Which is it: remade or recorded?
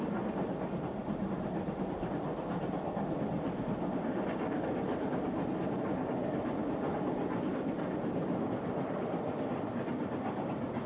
recorded